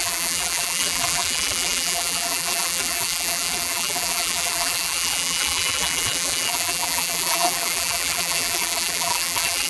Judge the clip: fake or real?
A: fake